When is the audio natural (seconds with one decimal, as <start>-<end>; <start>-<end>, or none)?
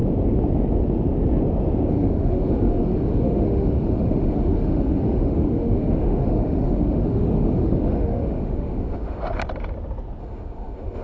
0.0-1.9; 9.2-10.2